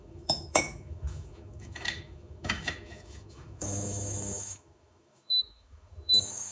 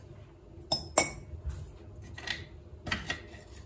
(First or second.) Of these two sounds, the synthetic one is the first